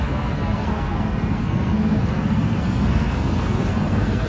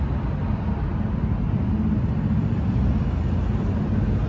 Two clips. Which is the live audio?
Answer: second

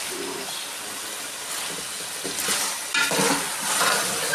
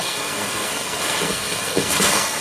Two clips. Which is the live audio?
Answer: first